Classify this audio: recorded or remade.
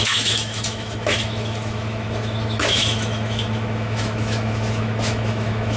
remade